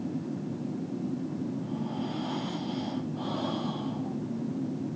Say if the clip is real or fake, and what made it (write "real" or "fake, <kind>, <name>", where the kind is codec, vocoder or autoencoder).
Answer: real